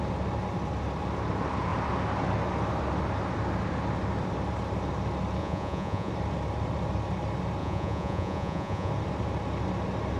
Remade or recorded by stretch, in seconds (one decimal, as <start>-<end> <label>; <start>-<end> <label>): 0.0-5.4 recorded; 5.4-6.1 remade; 6.1-7.6 recorded; 7.6-8.9 remade; 8.9-10.2 recorded